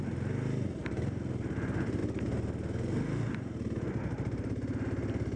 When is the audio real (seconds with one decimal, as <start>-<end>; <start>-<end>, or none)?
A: 0.0-5.4